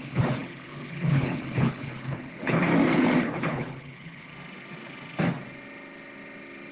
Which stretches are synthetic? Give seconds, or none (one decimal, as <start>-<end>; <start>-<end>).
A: 0.0-2.7; 3.2-4.3